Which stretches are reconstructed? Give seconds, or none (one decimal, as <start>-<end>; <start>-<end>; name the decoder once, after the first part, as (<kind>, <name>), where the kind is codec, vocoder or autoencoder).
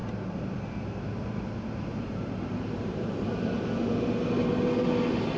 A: 0.0-3.2 (vocoder, BigVGAN v2)